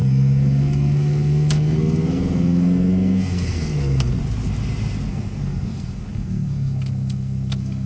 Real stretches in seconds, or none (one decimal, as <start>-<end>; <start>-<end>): 4.1-5.1